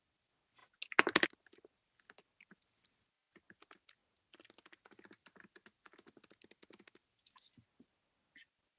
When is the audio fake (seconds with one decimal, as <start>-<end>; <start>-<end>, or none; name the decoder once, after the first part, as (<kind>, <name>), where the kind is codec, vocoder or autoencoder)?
none